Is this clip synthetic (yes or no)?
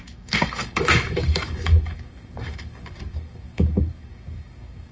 yes